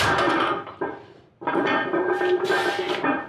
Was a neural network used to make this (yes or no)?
no